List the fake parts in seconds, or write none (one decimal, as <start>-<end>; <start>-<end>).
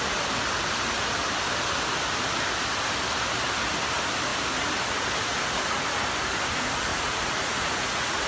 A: 6.9-8.3